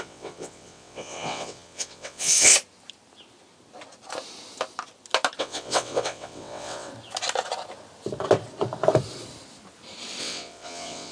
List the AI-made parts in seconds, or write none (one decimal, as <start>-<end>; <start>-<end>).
0.0-2.5; 5.4-6.9; 10.2-11.1